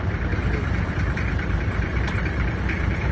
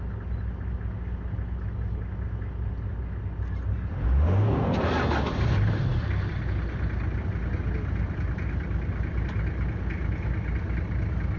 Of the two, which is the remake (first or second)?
first